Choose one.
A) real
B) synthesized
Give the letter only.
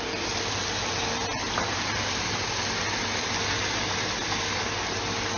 A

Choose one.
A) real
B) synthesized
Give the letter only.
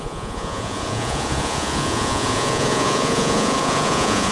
B